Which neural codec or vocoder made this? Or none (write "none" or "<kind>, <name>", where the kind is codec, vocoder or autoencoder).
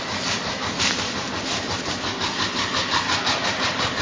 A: none